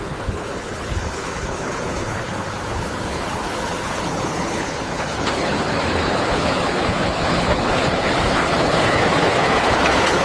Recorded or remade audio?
remade